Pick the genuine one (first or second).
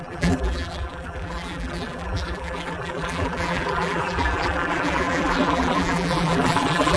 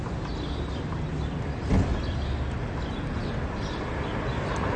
second